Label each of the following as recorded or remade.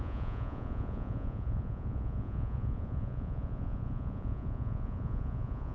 remade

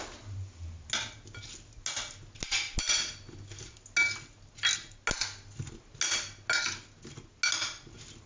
recorded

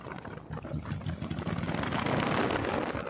recorded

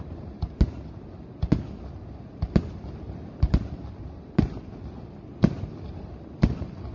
recorded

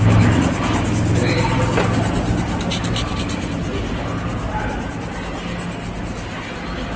recorded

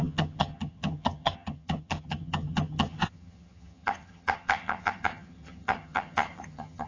remade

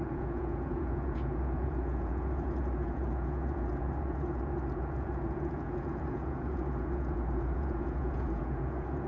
remade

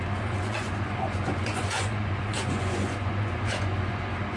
remade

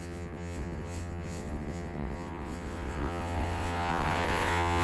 remade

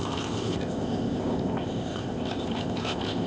remade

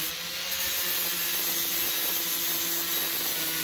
recorded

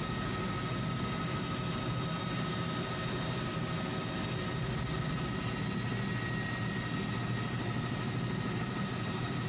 recorded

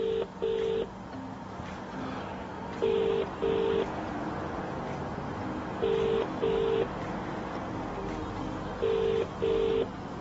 recorded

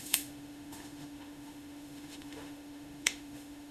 remade